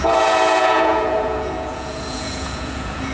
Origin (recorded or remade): remade